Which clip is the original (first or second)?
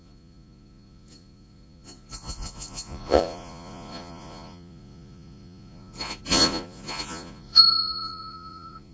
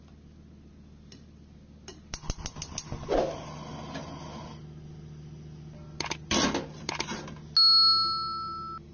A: second